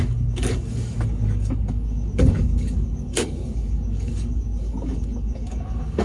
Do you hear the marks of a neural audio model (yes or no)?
yes